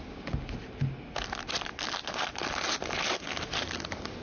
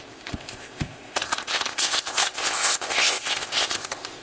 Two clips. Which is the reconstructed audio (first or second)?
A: second